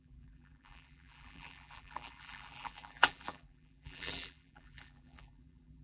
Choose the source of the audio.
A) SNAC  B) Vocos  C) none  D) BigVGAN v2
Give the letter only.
D